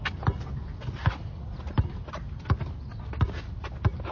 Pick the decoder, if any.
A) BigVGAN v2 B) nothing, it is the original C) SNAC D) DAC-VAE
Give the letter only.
B